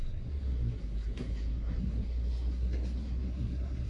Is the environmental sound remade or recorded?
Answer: remade